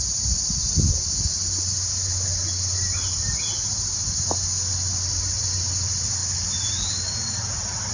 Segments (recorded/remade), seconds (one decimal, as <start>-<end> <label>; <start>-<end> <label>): 0.0-7.9 recorded